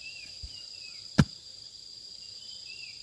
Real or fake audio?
fake